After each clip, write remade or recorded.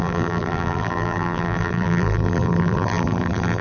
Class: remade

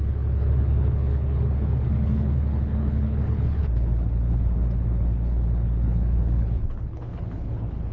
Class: remade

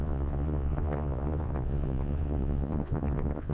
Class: remade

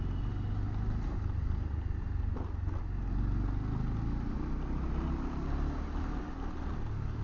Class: recorded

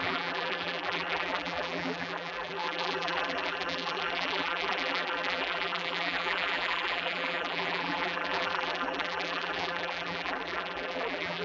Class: remade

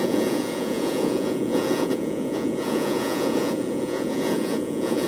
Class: remade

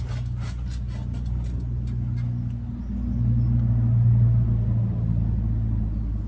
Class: recorded